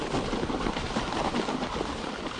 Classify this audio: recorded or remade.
recorded